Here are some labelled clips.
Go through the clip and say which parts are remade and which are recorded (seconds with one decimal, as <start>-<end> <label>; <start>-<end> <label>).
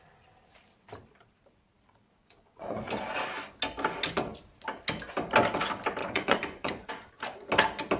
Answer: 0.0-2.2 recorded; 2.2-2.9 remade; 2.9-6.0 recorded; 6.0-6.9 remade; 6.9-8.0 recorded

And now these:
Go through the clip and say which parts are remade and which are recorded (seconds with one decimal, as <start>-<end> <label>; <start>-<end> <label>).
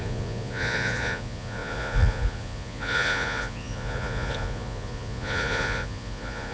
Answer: 0.0-6.5 remade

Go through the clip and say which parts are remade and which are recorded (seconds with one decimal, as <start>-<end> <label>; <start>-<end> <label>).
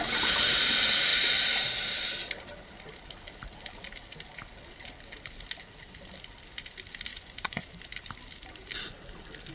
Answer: 0.0-7.1 recorded; 7.1-7.8 remade; 7.8-9.5 recorded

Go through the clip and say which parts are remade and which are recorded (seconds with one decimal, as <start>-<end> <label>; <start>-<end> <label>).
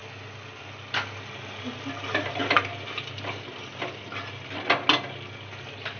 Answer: 0.0-6.0 recorded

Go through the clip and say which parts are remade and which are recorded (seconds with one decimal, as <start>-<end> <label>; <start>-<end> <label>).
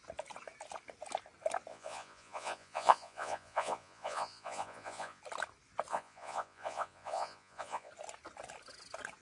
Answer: 0.0-1.7 recorded; 1.7-5.2 remade; 5.2-5.9 recorded; 5.9-7.9 remade; 7.9-9.2 recorded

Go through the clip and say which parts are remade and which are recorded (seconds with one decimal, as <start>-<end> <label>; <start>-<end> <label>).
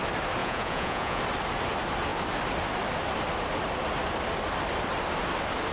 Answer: 0.0-0.4 recorded; 0.4-1.2 remade; 1.2-5.7 recorded